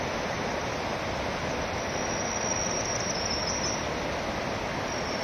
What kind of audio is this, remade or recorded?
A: recorded